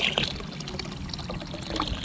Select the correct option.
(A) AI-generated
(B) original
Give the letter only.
B